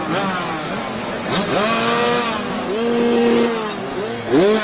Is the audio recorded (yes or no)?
yes